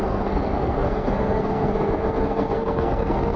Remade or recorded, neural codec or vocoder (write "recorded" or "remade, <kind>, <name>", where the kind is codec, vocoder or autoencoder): remade, codec, SNAC